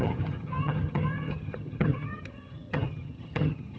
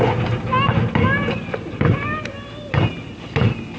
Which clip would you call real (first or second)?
second